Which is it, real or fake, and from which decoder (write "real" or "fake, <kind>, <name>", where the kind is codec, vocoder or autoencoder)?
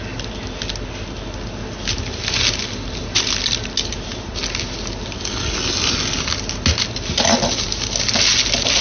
real